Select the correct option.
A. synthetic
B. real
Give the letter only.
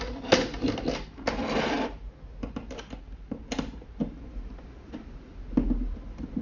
B